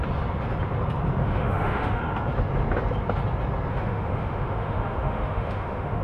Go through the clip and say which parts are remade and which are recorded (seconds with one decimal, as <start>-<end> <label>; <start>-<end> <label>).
0.0-1.2 recorded; 1.2-2.0 remade; 2.0-3.7 recorded; 3.7-6.0 remade